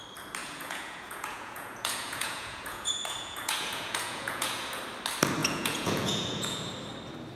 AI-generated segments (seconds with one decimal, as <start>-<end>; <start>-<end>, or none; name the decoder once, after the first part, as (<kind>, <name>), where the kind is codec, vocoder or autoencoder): 0.4-4.8 (vocoder, Vocos); 5.4-6.7